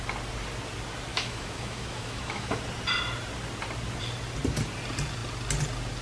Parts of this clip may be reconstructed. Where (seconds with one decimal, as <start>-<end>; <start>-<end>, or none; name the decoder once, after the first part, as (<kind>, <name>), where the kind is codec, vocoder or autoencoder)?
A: 1.1-2.6 (autoencoder, DAC-VAE)